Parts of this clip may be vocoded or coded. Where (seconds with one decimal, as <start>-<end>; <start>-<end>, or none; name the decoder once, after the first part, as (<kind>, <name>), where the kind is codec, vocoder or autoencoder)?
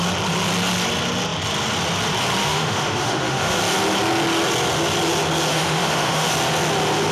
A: 2.4-3.6 (autoencoder, DAC-VAE); 5.5-6.3